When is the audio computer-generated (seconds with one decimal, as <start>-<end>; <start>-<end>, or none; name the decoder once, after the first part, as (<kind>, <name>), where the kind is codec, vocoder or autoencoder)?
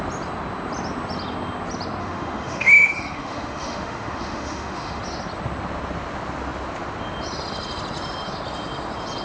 2.0-5.0 (autoencoder, DAC-VAE)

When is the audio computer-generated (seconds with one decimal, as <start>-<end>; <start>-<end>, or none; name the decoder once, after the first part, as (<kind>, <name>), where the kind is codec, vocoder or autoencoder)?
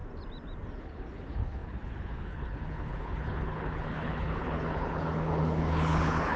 0.8-6.4 (codec, HILCodec)